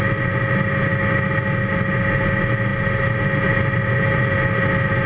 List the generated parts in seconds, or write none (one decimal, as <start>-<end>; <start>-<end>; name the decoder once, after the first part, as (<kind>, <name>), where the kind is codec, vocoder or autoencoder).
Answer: none